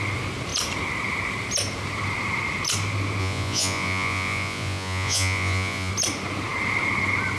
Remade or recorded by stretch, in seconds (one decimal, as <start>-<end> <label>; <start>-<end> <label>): 0.0-3.2 recorded; 3.2-5.9 remade; 5.9-7.4 recorded